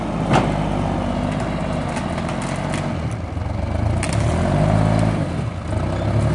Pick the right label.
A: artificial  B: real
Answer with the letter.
B